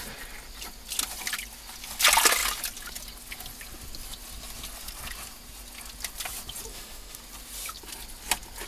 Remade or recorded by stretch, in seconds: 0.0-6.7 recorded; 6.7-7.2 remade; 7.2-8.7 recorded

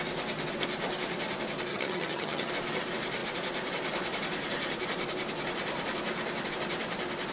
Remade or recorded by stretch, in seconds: 0.0-1.7 recorded; 1.7-2.5 remade; 2.5-7.3 recorded